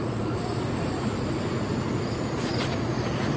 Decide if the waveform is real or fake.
fake